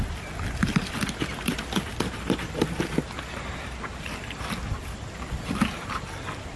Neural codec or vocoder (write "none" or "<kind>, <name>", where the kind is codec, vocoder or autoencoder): none